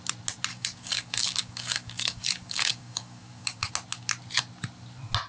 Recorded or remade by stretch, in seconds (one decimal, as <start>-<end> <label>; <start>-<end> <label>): 0.0-0.5 recorded; 0.5-3.7 remade; 3.7-5.3 recorded